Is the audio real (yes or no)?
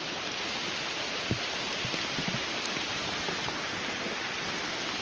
yes